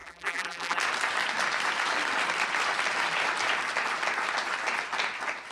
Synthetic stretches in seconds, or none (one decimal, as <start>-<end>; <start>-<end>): 0.0-0.8